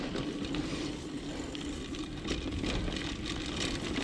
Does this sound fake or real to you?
real